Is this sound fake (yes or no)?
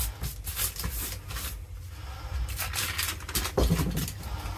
no